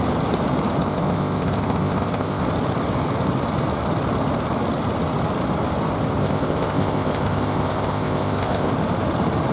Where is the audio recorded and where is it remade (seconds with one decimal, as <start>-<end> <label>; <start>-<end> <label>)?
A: 0.0-0.8 recorded; 0.8-2.4 remade; 2.4-6.2 recorded; 6.2-8.7 remade; 8.7-9.5 recorded